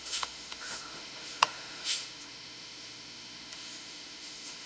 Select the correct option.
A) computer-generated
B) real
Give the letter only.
A